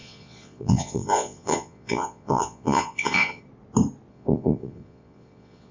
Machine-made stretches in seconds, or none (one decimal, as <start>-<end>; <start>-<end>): 0.0-3.4; 4.1-5.7